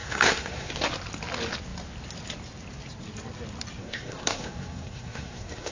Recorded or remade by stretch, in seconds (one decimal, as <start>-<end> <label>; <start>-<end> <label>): 0.0-0.7 remade; 0.7-3.8 recorded; 3.8-5.7 remade

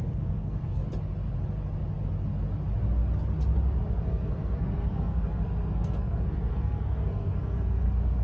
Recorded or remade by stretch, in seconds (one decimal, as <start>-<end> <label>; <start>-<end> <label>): 0.0-0.8 remade; 0.8-3.9 recorded; 3.9-8.2 remade

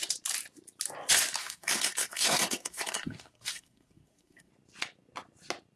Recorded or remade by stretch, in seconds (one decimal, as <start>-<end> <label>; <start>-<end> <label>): 0.0-1.4 recorded; 1.4-4.5 remade; 4.5-5.8 recorded

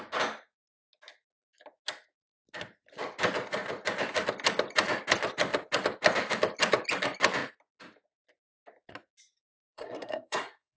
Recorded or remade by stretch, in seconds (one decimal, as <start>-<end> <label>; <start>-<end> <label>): 0.0-9.7 recorded; 9.7-10.8 remade

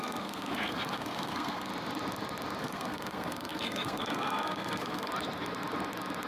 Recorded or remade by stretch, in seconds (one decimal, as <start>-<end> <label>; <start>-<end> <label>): 0.0-1.7 remade; 1.7-2.6 recorded; 2.6-5.1 remade; 5.1-6.3 recorded

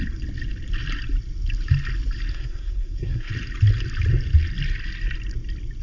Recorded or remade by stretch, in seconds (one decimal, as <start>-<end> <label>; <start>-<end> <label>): 0.0-2.3 recorded; 2.3-3.3 remade; 3.3-5.8 recorded